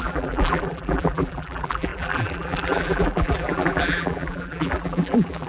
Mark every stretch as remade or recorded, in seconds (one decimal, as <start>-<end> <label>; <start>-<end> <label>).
0.0-5.5 remade